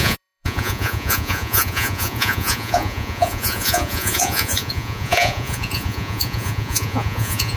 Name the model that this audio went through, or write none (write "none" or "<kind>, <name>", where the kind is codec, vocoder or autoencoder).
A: vocoder, Vocos